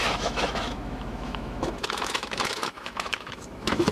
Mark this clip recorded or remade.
remade